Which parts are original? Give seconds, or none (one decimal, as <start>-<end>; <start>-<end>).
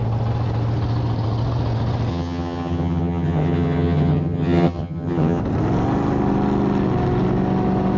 0.0-2.1; 5.4-8.0